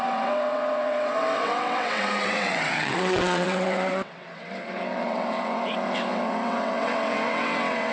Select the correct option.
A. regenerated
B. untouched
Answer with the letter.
A